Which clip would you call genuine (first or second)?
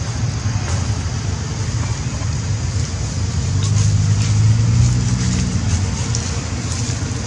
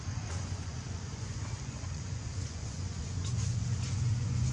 first